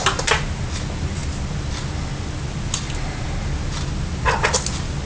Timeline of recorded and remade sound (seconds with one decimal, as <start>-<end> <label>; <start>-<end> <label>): 0.0-5.1 recorded